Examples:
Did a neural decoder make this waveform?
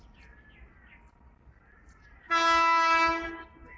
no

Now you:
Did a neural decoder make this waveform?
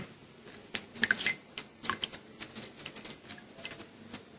no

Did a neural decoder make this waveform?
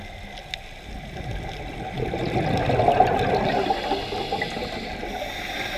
no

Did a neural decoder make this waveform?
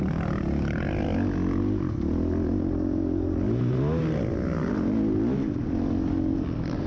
no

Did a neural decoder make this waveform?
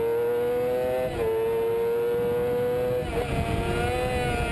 no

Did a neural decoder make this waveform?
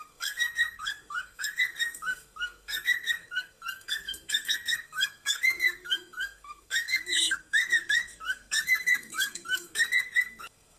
yes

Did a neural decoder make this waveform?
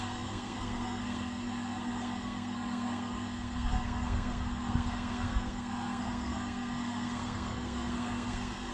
yes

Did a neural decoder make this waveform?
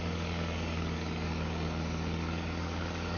yes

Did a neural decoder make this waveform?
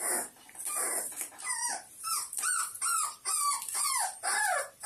yes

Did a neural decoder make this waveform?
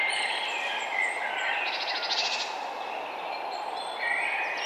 no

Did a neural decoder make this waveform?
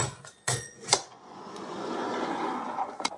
yes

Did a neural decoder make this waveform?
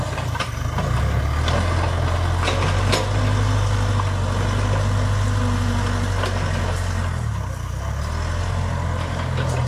no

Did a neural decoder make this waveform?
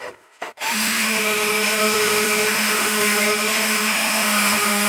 yes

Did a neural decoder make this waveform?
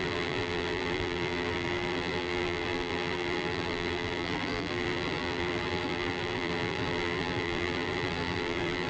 yes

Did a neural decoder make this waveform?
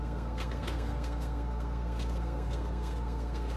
yes